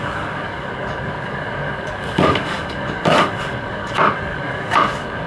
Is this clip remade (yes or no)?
yes